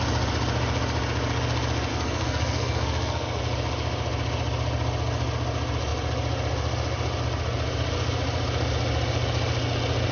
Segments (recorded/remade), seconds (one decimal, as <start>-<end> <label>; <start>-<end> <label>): 0.0-1.9 recorded; 1.9-3.4 remade; 3.4-10.1 recorded